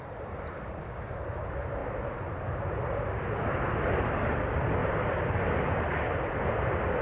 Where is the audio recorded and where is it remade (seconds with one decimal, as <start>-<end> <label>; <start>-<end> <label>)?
0.0-7.0 recorded